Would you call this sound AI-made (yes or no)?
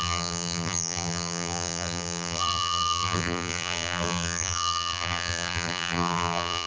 yes